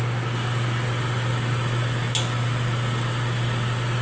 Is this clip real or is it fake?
real